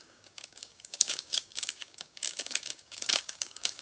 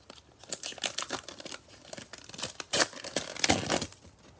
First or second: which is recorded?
second